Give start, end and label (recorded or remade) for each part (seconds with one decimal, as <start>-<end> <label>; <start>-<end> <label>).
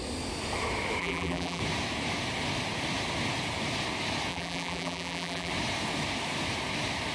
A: 0.0-1.0 recorded; 1.0-1.6 remade; 1.6-4.3 recorded; 4.3-5.5 remade; 5.5-7.1 recorded